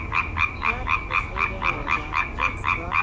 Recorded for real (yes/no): no